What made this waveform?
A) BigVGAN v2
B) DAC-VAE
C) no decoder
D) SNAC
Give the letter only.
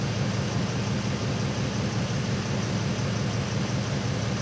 C